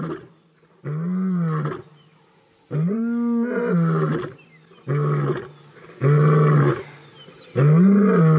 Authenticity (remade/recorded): recorded